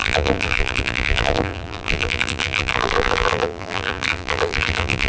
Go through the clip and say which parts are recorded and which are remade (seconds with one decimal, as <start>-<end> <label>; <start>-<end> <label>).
0.0-5.1 remade